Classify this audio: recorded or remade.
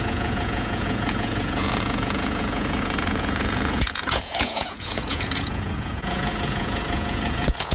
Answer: remade